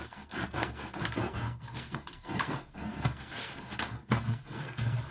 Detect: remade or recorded remade